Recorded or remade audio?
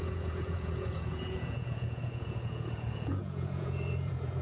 remade